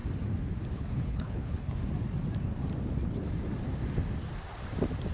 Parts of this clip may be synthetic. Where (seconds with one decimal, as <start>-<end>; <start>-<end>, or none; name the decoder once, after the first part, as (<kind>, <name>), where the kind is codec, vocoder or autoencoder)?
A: 0.7-1.8 (codec, HILCodec)